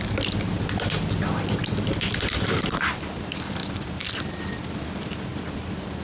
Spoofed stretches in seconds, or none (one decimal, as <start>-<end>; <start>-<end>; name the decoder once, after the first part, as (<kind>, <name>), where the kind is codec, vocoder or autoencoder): 1.6-3.2 (vocoder, BigVGAN v2); 3.6-4.3; 5.3-6.0